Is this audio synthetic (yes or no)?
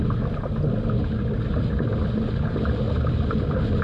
no